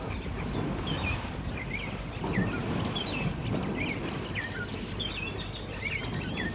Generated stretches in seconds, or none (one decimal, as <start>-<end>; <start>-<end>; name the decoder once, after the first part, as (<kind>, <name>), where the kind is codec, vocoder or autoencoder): none

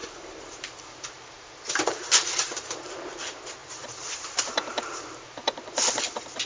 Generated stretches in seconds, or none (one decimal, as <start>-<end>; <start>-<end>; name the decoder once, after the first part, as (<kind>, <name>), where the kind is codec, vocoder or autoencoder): 0.0-3.1 (vocoder, BigVGAN v2); 3.6-6.0

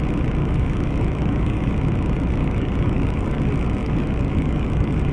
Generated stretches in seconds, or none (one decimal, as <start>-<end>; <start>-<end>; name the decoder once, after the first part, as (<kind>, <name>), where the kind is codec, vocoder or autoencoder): 0.4-1.7 (codec, DAC); 2.4-3.4; 3.8-5.1